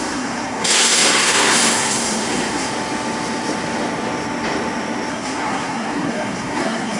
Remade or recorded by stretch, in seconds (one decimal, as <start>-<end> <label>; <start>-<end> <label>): 0.0-2.7 remade; 2.7-5.1 recorded; 5.1-7.0 remade